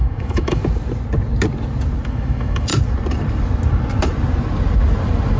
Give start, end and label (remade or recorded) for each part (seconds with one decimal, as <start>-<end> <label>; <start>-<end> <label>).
0.0-0.6 remade; 0.6-2.1 recorded; 2.1-2.7 remade; 2.7-5.4 recorded